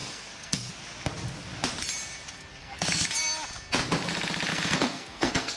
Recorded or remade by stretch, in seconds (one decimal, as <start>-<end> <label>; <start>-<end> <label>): 0.0-0.7 remade; 0.7-2.6 recorded; 2.6-3.1 remade; 3.1-4.5 recorded; 4.5-5.6 remade